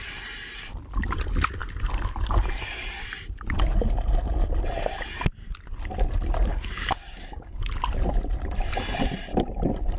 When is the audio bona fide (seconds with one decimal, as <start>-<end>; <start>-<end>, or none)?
0.0-6.5; 7.6-10.0